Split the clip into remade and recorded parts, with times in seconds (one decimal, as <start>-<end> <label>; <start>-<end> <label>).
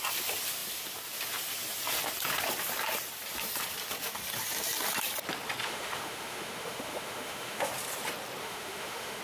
0.0-5.6 recorded; 5.6-7.7 remade; 7.7-8.4 recorded; 8.4-9.2 remade